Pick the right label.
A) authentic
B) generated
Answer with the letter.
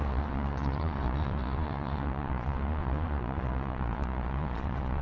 B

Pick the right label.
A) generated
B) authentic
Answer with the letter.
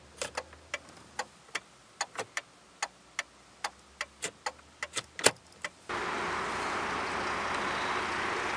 B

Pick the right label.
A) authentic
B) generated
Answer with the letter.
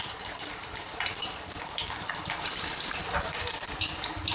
A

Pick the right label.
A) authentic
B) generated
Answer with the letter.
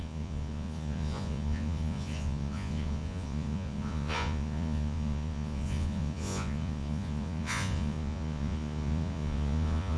B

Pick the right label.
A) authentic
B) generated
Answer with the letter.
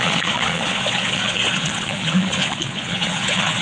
B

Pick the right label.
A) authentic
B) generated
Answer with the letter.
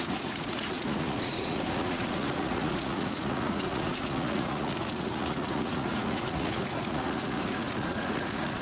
B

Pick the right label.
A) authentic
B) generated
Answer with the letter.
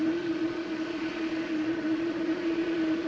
B